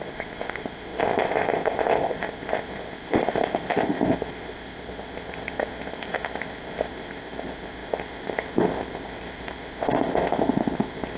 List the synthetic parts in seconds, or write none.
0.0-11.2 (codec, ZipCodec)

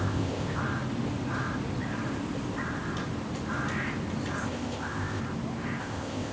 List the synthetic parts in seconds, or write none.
0.0-0.6 (codec, ZipCodec); 4.4-5.2; 5.8-6.3

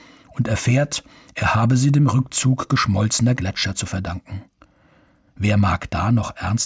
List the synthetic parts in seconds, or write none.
none